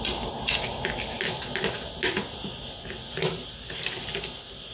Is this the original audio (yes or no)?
yes